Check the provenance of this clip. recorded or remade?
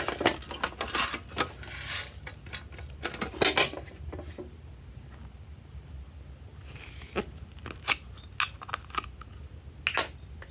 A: recorded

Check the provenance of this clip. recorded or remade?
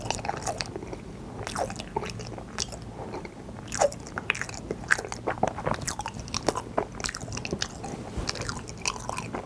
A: recorded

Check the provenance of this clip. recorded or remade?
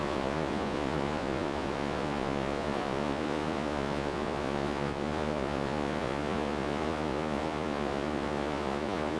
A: remade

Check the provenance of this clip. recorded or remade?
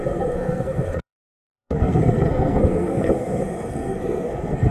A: remade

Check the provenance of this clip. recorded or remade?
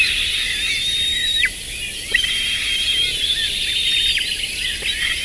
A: recorded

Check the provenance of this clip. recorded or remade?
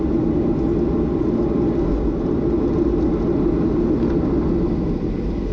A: recorded